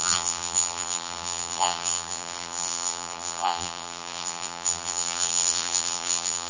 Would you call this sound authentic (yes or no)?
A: no